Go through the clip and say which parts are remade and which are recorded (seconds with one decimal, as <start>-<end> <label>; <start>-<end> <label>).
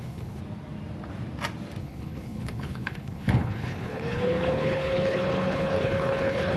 0.0-0.4 remade; 0.4-1.8 recorded; 1.8-6.6 remade